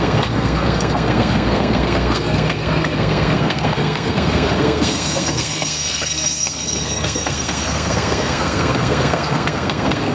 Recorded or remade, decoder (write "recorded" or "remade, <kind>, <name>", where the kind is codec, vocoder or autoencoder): remade, codec, SNAC